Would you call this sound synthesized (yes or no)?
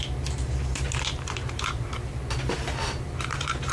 yes